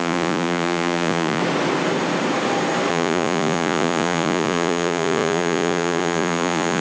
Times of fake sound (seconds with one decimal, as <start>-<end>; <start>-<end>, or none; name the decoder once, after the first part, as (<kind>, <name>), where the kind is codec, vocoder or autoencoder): 0.0-1.4 (vocoder, Vocos); 2.9-6.8